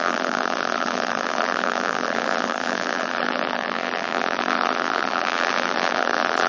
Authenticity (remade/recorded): remade